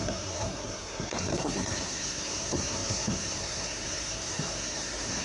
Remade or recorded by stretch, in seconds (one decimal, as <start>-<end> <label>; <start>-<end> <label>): 0.0-5.2 remade